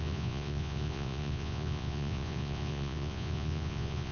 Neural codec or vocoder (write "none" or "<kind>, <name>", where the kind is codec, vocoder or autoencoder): vocoder, Vocos